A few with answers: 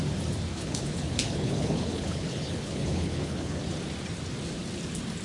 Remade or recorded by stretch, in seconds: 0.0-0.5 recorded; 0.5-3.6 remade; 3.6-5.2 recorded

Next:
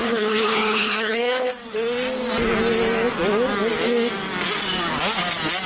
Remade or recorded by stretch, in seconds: 0.0-1.5 remade; 1.5-5.7 recorded

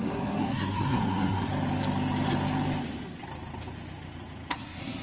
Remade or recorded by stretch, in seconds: 0.0-1.5 remade; 1.5-4.5 recorded; 4.5-5.0 remade

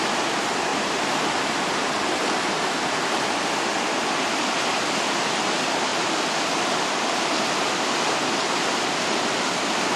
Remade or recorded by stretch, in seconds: 0.0-0.7 recorded; 0.7-1.5 remade; 1.5-10.0 recorded